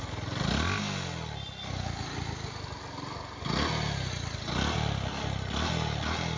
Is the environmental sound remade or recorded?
recorded